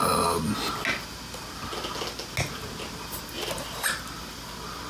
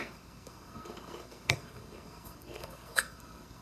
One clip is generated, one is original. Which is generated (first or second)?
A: second